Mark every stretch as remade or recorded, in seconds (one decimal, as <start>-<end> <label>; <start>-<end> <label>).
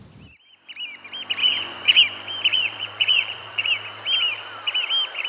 0.0-1.4 recorded; 1.4-2.0 remade; 2.0-2.5 recorded; 2.5-3.6 remade; 3.6-5.3 recorded